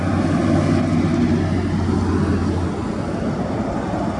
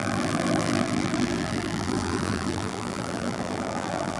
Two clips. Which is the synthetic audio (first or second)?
second